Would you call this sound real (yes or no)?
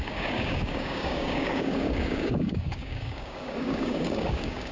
no